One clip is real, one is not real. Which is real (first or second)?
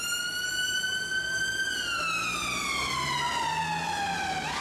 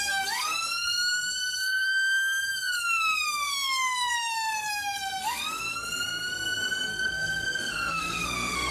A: first